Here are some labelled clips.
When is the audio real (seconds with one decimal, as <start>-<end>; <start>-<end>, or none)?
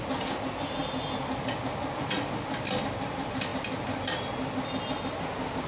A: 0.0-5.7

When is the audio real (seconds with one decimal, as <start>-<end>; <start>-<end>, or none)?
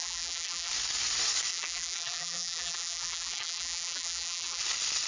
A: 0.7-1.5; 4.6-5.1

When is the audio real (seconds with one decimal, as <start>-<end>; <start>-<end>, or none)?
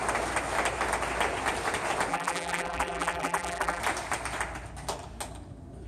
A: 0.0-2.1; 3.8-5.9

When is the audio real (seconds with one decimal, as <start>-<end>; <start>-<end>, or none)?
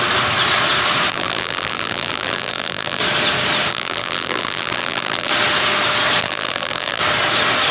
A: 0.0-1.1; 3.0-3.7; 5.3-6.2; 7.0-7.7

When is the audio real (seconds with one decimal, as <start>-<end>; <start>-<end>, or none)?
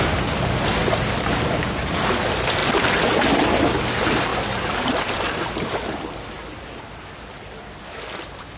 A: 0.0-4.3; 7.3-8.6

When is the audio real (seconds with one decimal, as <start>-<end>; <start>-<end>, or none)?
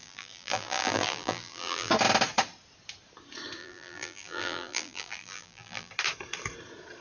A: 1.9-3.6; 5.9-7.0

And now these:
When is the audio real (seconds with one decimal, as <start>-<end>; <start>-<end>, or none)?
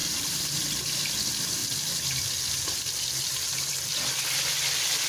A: 0.6-5.1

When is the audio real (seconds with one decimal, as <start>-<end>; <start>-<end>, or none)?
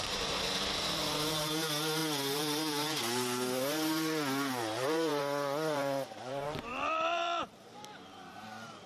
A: none